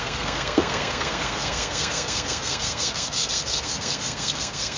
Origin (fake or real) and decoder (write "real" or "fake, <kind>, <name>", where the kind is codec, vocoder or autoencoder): fake, codec, SNAC